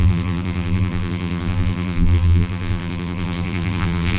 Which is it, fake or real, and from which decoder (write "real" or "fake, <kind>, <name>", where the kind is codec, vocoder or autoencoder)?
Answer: fake, vocoder, BigVGAN v2